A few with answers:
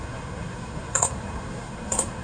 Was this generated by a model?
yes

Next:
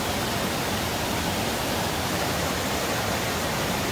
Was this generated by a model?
no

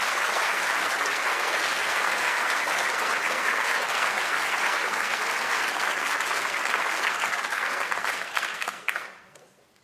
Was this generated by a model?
yes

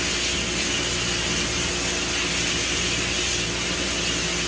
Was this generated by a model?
no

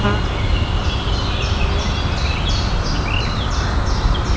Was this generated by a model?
no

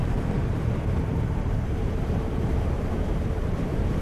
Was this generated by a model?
yes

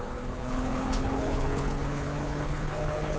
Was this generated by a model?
yes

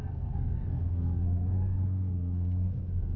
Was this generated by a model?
yes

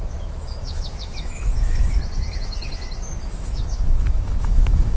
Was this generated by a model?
yes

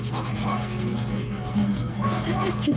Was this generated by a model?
yes